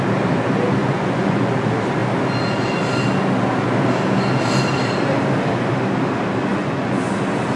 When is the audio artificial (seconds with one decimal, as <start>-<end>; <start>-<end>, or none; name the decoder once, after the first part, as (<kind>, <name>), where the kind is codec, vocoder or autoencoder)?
0.8-1.5 (vocoder, Vocos); 6.5-7.1